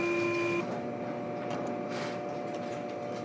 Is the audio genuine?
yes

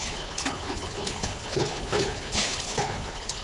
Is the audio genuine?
no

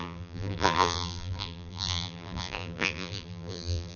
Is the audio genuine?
no